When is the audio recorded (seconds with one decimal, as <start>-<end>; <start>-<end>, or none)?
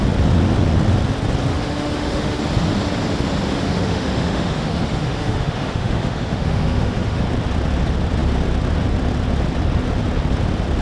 0.0-1.5; 2.4-3.5; 7.2-10.8